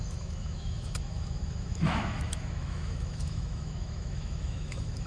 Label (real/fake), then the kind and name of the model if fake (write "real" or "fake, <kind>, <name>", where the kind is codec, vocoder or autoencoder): fake, autoencoder, DAC-VAE